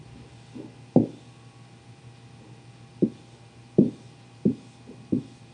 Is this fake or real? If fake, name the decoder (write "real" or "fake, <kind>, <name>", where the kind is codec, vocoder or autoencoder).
real